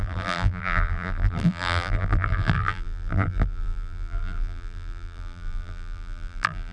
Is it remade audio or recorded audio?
remade